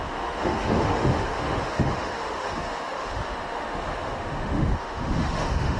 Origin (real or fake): fake